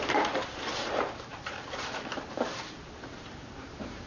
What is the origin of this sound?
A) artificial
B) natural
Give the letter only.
A